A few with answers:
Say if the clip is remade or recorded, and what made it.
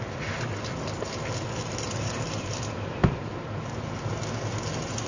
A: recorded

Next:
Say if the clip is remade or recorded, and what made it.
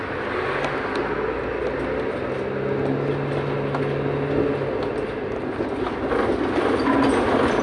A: recorded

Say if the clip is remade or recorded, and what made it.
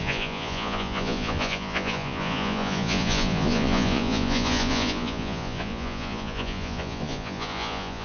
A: remade, vocoder, Vocos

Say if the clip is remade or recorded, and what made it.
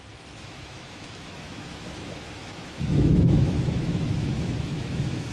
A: remade, autoencoder, DAC-VAE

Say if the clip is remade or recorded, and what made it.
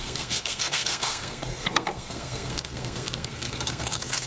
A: remade, codec, SNAC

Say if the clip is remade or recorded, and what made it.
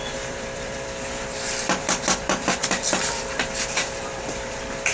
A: remade, vocoder, BigVGAN v2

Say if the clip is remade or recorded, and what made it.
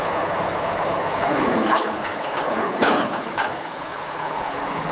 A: remade, codec, HILCodec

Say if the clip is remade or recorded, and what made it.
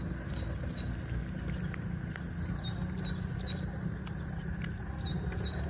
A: recorded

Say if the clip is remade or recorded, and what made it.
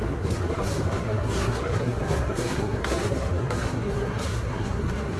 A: remade, codec, SNAC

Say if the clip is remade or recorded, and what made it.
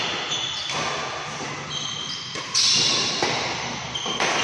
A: recorded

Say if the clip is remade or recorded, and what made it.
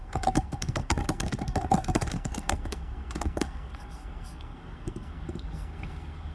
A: remade, codec, SNAC